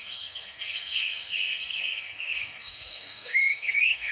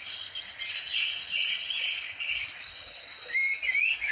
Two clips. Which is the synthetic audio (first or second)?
first